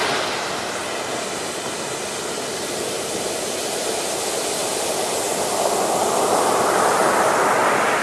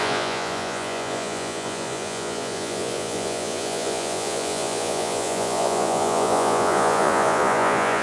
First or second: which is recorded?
first